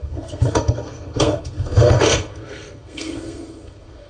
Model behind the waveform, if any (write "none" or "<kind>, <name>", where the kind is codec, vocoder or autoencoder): codec, SNAC